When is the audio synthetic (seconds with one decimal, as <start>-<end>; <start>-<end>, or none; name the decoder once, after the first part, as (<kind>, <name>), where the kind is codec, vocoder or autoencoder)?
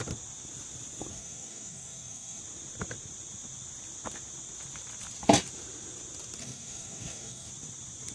1.1-2.4 (codec, DAC); 6.4-7.5